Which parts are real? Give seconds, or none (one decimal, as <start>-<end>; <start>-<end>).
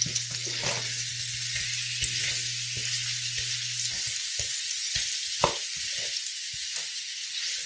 0.0-7.7